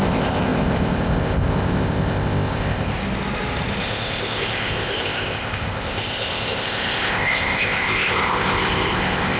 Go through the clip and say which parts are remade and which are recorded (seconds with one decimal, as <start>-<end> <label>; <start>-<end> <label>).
0.0-2.9 remade; 2.9-3.8 recorded; 3.8-9.4 remade